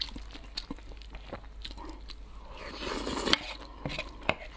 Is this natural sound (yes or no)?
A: yes